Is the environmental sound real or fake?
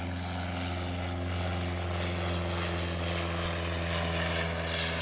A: real